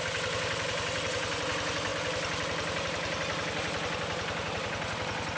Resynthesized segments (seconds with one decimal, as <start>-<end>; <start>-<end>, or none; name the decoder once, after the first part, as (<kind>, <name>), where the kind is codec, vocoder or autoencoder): none